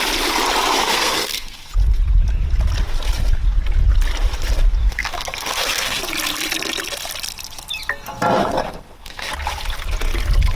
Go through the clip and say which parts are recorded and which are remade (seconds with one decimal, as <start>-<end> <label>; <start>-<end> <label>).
0.0-0.8 recorded; 0.8-1.7 remade; 1.7-4.8 recorded; 4.8-6.0 remade; 6.0-8.4 recorded; 8.4-9.3 remade; 9.3-10.6 recorded